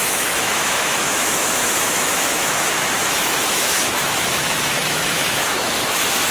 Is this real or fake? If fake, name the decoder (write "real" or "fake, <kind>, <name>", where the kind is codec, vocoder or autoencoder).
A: fake, autoencoder, DAC-VAE